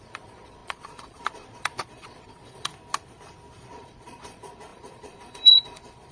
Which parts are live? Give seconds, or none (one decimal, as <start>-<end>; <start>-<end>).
2.7-3.5